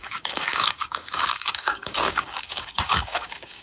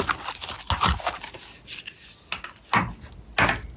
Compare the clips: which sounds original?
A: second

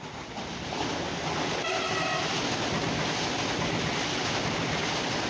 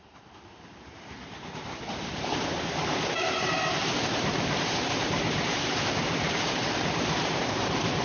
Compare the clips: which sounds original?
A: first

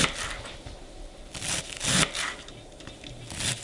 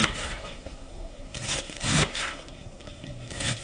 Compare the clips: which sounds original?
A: first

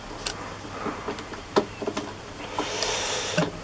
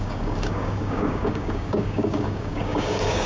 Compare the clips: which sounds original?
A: first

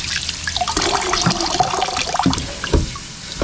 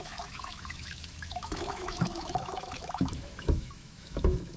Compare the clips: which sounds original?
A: first